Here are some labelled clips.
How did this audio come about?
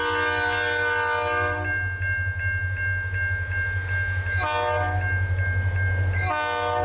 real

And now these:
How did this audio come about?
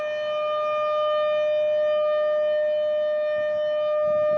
real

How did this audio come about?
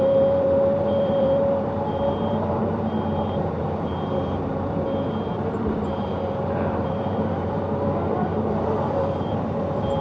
fake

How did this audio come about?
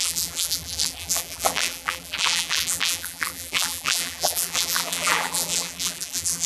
fake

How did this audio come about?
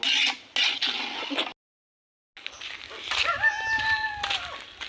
real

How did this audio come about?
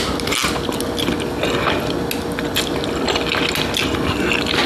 real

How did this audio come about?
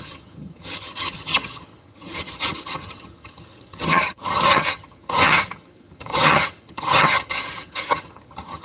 fake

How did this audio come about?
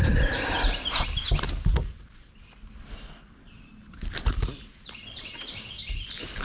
real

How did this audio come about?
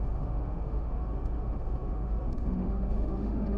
fake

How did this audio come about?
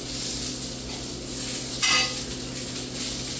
real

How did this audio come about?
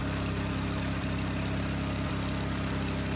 real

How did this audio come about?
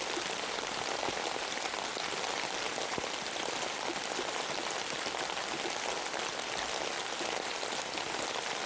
real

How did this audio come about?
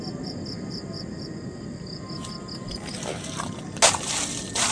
real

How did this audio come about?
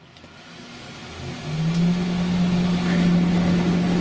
real